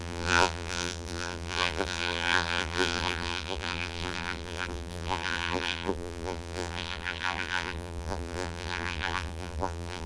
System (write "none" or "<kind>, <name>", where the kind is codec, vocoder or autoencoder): vocoder, BigVGAN v2